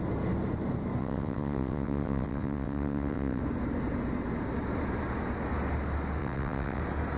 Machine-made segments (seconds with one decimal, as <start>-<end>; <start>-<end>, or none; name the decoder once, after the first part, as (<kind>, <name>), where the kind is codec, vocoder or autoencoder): 1.0-3.4 (vocoder, WaveNeXt); 6.2-6.8